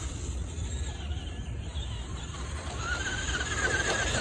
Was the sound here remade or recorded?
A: recorded